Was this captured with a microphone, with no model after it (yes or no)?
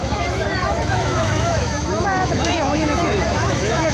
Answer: no